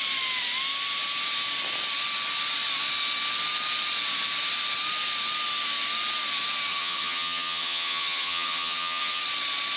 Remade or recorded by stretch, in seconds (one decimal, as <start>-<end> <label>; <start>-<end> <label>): 0.0-6.7 recorded; 6.7-9.2 remade; 9.2-9.8 recorded

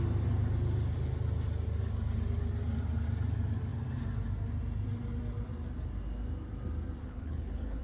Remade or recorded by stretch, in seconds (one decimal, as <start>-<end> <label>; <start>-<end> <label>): 0.0-7.0 recorded; 7.0-7.8 remade

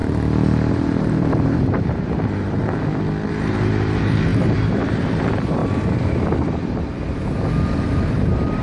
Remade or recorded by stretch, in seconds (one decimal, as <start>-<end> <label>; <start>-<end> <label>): 0.0-0.7 recorded; 0.7-2.6 remade; 2.6-3.3 recorded; 3.3-5.6 remade; 5.6-8.1 recorded; 8.1-8.6 remade

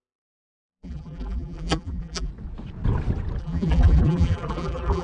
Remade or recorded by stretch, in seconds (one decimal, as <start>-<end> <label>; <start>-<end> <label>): 0.0-2.3 remade; 2.3-3.4 recorded; 3.4-5.0 remade

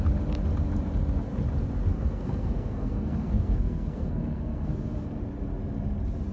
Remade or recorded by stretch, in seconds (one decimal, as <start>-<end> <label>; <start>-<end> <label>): 0.0-1.9 recorded; 1.9-5.2 remade; 5.2-6.3 recorded